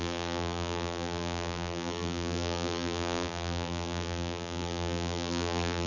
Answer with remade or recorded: remade